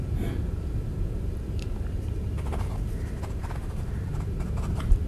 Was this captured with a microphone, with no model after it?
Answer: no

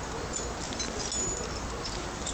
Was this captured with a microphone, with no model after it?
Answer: yes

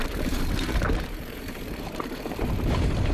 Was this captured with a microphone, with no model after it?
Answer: no